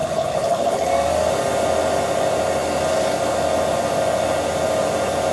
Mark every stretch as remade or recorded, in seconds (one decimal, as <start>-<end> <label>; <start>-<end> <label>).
0.0-0.9 remade; 0.9-5.3 recorded